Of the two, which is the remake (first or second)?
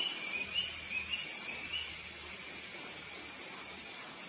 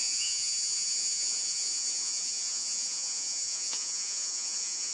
second